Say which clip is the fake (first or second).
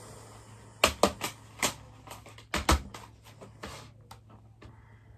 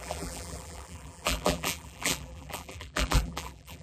second